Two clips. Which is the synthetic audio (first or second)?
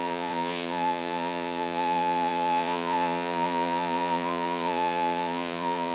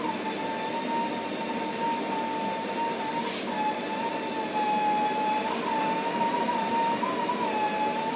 first